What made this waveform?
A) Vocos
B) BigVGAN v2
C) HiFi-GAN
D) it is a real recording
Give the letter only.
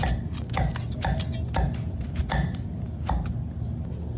D